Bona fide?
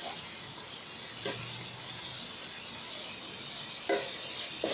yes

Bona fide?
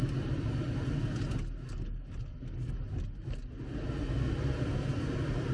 yes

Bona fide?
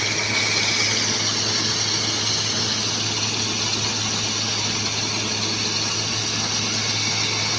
yes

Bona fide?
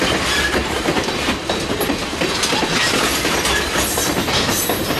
yes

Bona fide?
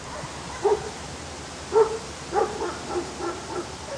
yes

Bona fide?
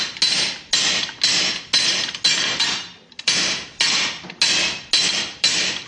yes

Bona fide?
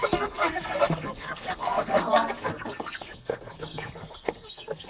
no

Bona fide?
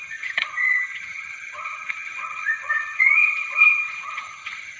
no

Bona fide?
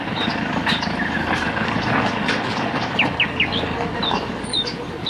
no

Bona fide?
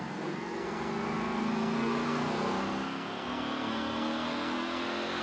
no